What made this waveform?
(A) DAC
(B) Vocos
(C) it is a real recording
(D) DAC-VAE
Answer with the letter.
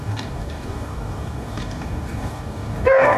A